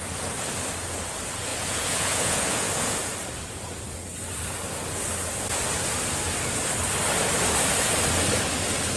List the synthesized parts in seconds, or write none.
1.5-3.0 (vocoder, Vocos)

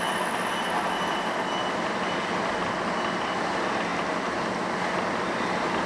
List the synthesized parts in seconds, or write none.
none

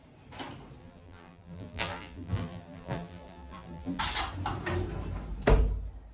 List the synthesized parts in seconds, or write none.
0.8-4.0 (vocoder, BigVGAN v2)

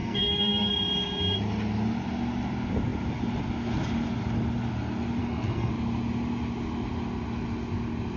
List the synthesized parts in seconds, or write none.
0.0-0.7 (codec, SNAC); 5.2-5.7

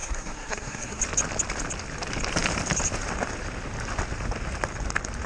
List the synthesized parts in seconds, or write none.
0.0-1.0 (codec, SNAC)

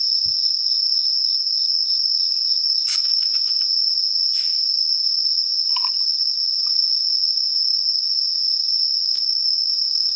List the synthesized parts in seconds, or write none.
2.9-3.5 (autoencoder, DAC-VAE); 7.6-8.1; 8.9-10.2